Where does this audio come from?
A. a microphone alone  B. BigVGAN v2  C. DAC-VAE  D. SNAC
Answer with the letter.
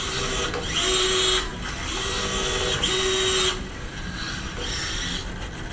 A